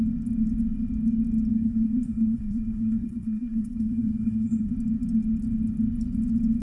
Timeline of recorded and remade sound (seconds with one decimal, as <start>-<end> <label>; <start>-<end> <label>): 0.0-1.5 recorded; 1.5-4.7 remade; 4.7-6.6 recorded